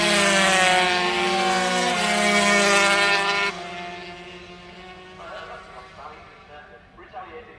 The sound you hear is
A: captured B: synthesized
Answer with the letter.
A